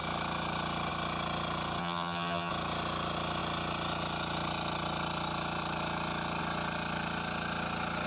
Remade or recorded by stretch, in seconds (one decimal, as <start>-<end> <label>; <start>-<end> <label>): 0.0-1.8 recorded; 1.8-2.5 remade; 2.5-8.1 recorded